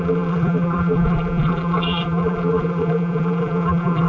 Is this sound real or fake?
fake